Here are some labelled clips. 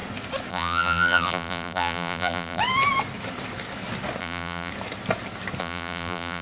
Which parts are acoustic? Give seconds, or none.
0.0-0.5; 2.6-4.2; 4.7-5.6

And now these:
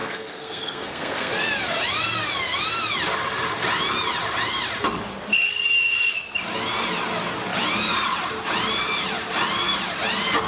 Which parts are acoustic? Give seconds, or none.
1.3-10.5